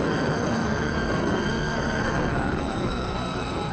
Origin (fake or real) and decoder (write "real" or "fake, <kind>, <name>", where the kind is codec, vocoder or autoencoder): fake, codec, SNAC